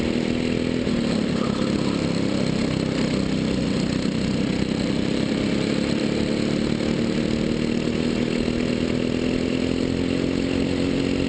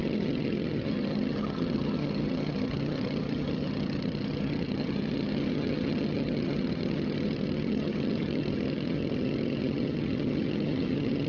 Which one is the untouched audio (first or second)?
first